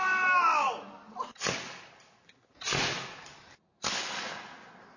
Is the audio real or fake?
real